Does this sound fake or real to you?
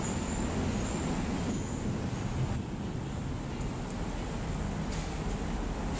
real